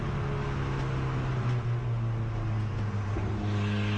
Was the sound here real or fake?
real